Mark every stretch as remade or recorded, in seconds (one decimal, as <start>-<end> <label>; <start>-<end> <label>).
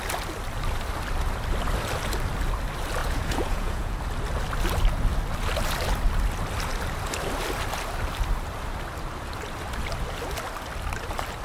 0.0-3.0 recorded; 3.0-4.0 remade; 4.0-11.4 recorded